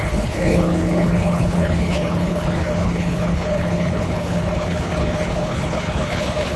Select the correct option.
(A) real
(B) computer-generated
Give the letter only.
B